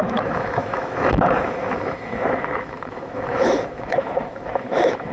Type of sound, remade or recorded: remade